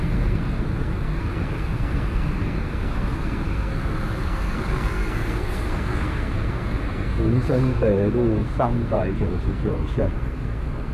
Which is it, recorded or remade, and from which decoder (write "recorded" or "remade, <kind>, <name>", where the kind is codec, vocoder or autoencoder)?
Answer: remade, codec, SNAC